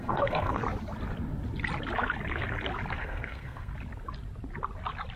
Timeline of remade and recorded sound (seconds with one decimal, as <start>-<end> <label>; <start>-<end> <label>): 0.0-0.6 remade; 0.6-3.0 recorded; 3.0-3.7 remade; 3.7-5.2 recorded